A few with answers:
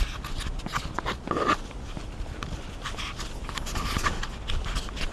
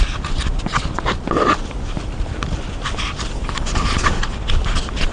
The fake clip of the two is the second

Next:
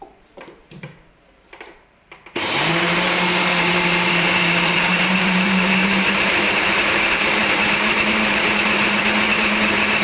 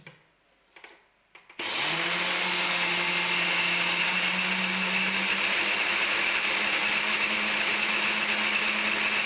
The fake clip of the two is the first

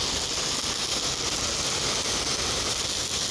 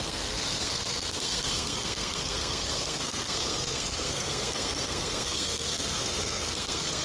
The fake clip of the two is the second